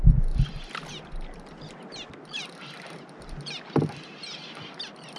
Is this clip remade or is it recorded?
recorded